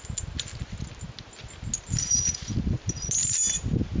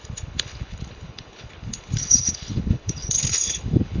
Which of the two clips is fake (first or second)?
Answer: second